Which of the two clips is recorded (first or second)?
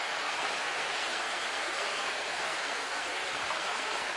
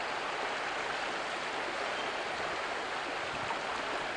second